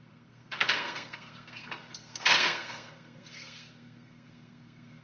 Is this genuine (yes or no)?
no